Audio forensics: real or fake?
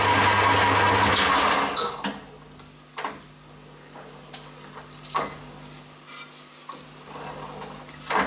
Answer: real